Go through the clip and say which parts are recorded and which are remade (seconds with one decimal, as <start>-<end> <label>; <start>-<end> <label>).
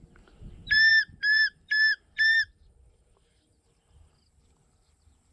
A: 0.0-0.9 recorded; 0.9-4.1 remade; 4.1-5.3 recorded